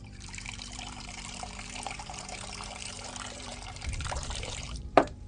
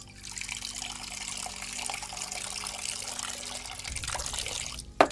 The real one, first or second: second